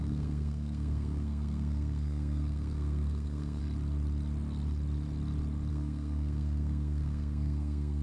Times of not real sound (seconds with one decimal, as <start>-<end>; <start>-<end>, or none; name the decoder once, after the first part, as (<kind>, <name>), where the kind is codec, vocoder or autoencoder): 0.0-3.6 (codec, SNAC); 5.7-8.0